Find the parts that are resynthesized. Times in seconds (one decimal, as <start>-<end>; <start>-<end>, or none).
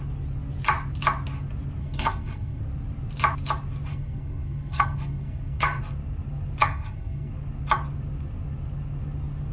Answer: 1.8-2.6; 3.9-5.8; 6.6-7.3